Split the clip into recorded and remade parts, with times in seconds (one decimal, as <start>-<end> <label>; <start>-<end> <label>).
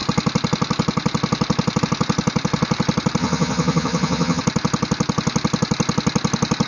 0.0-3.2 recorded; 3.2-4.4 remade; 4.4-6.7 recorded